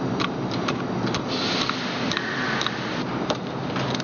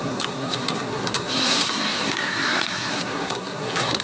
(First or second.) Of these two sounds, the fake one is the second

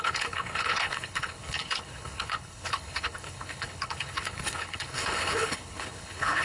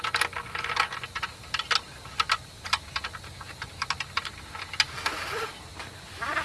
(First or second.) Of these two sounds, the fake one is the first